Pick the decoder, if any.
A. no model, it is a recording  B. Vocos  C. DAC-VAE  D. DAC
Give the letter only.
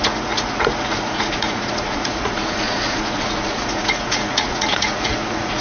B